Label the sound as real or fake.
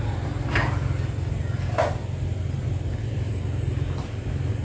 real